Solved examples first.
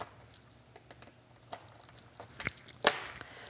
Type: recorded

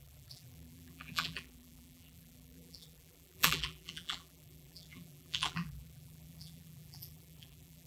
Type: remade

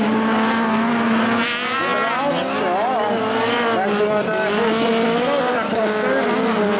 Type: recorded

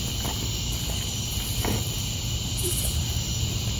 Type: recorded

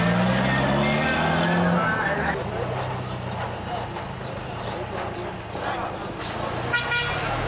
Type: recorded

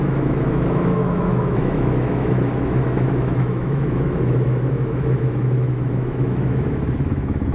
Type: remade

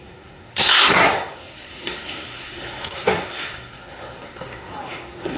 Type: remade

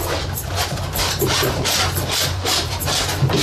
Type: recorded